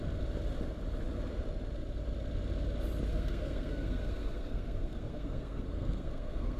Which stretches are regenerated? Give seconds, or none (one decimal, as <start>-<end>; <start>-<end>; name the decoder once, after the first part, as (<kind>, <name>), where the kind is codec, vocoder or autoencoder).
3.1-6.6 (codec, SNAC)